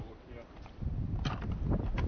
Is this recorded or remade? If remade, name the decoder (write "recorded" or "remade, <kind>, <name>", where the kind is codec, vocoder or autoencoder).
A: recorded